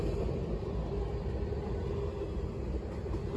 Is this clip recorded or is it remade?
recorded